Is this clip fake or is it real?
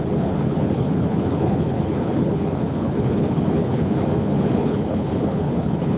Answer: fake